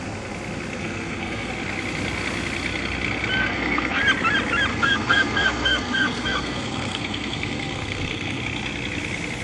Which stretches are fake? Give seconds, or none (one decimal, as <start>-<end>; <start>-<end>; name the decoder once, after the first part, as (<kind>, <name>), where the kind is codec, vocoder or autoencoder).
0.8-1.5 (codec, SNAC); 3.4-4.0; 4.7-8.4